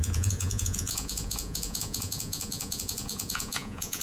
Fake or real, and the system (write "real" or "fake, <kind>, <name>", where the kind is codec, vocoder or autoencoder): fake, vocoder, Vocos